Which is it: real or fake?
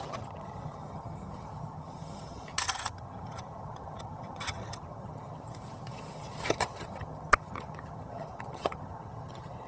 fake